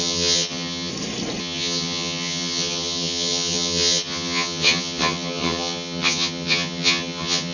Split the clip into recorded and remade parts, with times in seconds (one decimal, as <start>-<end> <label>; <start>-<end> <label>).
0.0-0.9 remade; 0.9-1.4 recorded; 1.4-7.5 remade